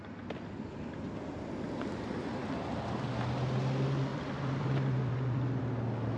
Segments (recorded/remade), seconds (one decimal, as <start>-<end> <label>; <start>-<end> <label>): 0.0-4.1 recorded; 4.1-5.6 remade; 5.6-6.2 recorded